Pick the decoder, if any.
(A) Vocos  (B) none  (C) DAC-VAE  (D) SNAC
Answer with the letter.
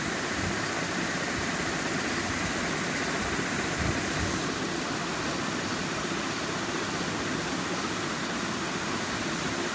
B